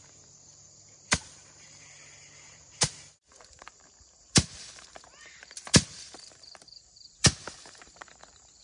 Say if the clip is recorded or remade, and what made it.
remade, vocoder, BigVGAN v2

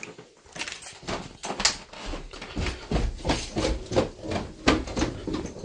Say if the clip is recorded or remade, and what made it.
recorded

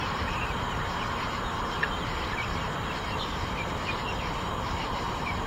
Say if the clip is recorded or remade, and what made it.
remade, vocoder, BigVGAN v2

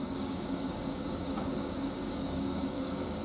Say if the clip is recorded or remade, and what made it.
remade, codec, DAC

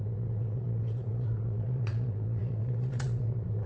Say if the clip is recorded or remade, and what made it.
remade, vocoder, Vocos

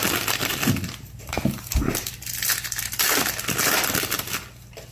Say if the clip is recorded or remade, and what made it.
recorded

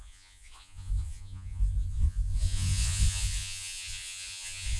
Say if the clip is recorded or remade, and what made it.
remade, vocoder, Vocos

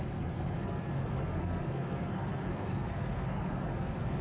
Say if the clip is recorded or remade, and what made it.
remade, codec, SNAC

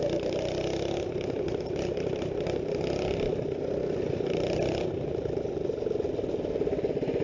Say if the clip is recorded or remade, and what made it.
recorded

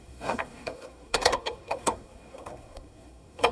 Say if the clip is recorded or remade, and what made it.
remade, codec, SNAC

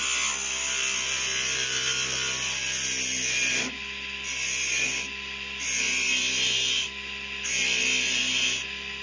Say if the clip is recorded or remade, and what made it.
recorded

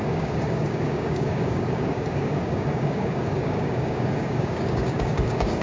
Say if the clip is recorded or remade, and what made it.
remade, codec, DAC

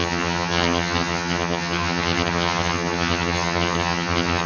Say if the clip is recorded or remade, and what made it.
remade, vocoder, HiFi-GAN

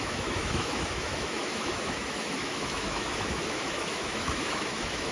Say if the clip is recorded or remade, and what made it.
remade, autoencoder, DAC-VAE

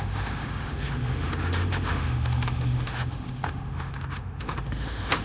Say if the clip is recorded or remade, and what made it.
remade, autoencoder, DAC-VAE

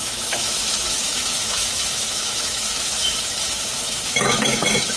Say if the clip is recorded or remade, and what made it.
remade, autoencoder, DAC-VAE